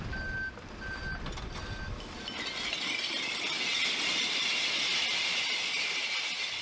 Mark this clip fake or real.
real